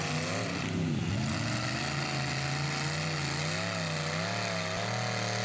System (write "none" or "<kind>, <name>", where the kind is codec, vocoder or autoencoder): none